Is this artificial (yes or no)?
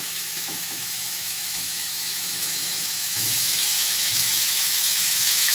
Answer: yes